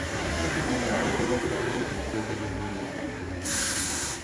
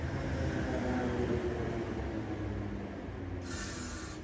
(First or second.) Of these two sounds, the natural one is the second